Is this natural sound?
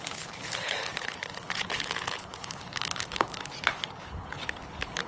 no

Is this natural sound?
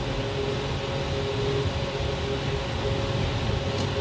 yes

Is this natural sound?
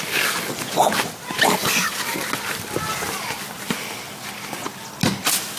yes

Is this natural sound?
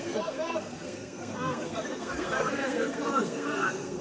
no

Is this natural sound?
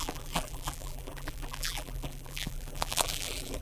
no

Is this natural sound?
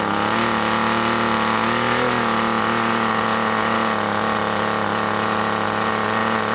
yes